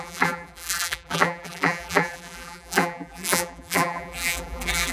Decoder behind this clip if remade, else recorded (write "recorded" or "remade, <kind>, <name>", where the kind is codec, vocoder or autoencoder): remade, vocoder, BigVGAN v2